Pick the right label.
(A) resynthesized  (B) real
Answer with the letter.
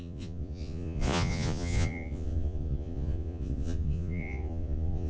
A